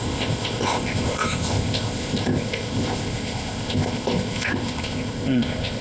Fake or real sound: fake